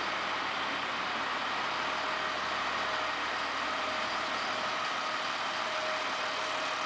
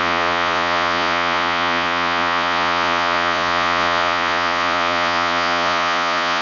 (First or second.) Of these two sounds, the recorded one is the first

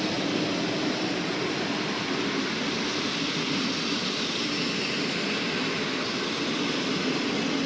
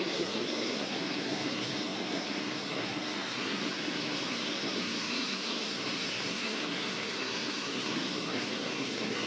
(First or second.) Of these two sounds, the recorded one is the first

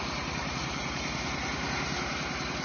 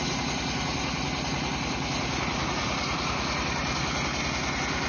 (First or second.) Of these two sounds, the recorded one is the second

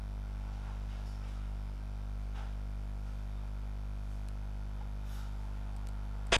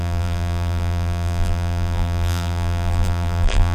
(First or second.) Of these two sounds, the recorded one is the first